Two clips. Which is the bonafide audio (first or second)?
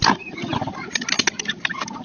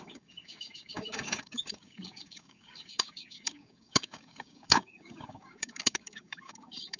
first